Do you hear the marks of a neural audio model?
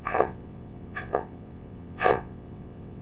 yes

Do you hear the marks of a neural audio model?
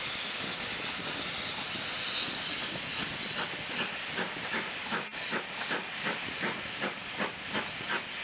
no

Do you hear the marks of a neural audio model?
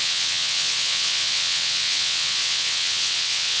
yes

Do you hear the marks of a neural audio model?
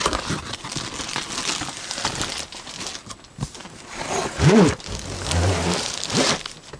no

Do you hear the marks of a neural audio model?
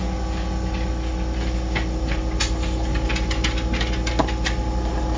no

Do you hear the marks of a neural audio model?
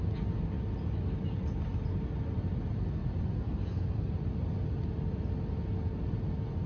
no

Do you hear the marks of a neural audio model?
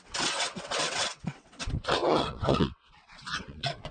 yes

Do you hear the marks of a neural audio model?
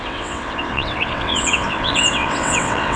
yes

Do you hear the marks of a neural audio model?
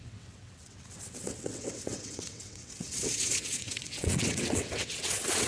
yes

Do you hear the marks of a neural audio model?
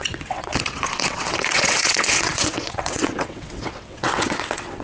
yes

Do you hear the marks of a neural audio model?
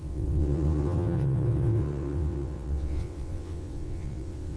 yes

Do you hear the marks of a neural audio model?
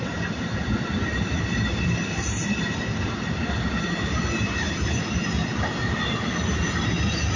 no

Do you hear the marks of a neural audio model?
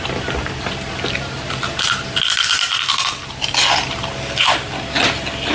no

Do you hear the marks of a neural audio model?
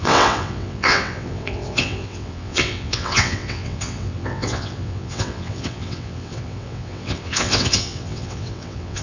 yes